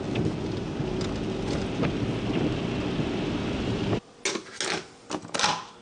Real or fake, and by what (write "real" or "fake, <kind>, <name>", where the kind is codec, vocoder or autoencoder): real